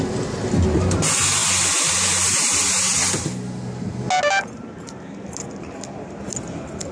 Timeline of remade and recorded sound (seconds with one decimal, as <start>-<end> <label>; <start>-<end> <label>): 0.0-6.9 recorded